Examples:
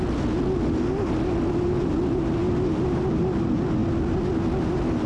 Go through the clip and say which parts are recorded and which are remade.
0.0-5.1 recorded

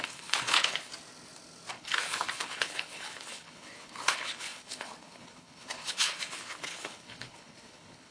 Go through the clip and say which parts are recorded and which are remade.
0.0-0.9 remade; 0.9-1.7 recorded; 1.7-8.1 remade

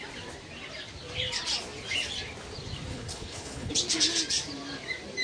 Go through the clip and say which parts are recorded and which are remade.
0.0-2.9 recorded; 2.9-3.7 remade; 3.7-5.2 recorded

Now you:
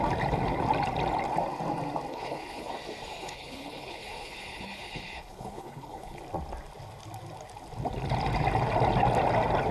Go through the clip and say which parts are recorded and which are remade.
0.0-2.1 recorded; 2.1-2.7 remade; 2.7-3.2 recorded; 3.2-6.2 remade; 6.2-9.7 recorded